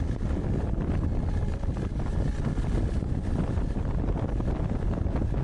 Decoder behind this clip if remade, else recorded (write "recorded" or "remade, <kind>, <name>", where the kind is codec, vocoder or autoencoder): recorded